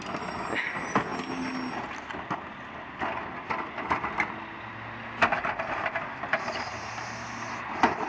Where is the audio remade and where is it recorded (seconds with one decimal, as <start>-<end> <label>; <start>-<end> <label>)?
0.0-6.7 recorded; 6.7-7.4 remade; 7.4-8.1 recorded